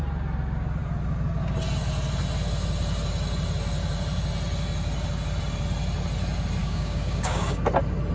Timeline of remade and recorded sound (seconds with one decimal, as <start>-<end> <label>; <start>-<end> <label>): 0.0-6.6 recorded; 6.6-7.6 remade; 7.6-8.1 recorded